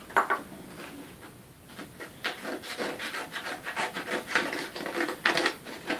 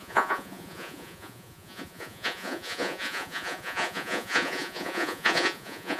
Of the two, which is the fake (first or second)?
second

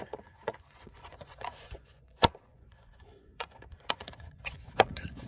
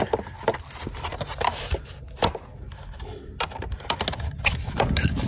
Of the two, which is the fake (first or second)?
first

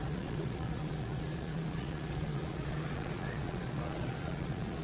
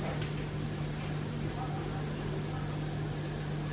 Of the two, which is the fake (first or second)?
first